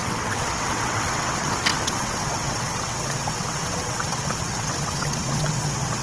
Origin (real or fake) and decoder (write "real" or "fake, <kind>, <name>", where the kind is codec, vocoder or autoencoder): fake, vocoder, WaveNeXt